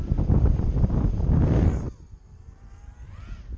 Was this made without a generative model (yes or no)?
no